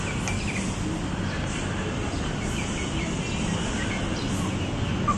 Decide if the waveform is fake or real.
real